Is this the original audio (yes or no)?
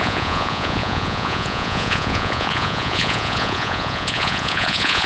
no